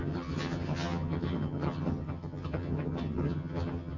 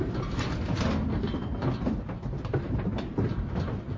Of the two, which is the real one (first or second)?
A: second